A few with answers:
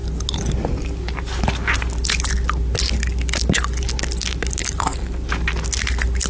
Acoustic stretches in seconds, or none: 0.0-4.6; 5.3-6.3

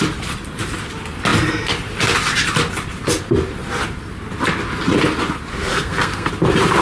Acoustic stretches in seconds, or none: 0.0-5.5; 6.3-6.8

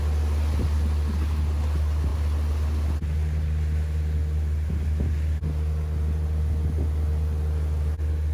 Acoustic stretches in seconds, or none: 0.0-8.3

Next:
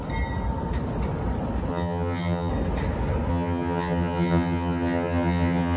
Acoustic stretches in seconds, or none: 0.0-1.7; 2.5-3.3

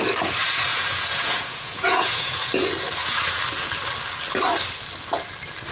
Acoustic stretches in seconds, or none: 0.0-0.7; 2.5-5.7

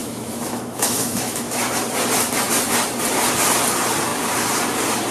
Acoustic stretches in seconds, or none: 1.6-5.1

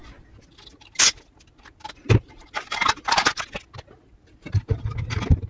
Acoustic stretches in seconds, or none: 0.0-5.5